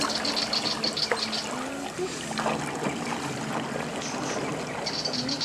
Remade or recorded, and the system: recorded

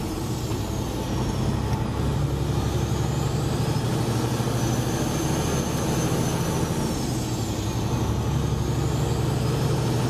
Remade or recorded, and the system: recorded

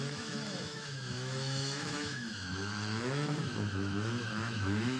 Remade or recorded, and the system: remade, autoencoder, DAC-VAE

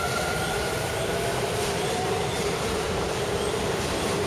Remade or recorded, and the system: remade, vocoder, BigVGAN v2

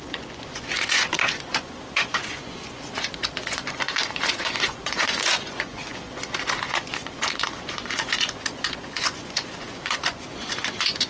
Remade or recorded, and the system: remade, vocoder, Vocos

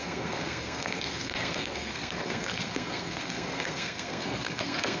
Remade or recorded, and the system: remade, codec, SNAC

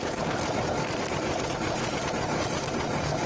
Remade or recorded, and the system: recorded